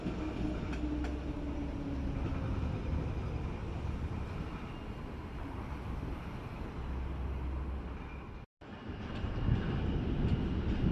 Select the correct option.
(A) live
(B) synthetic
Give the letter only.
A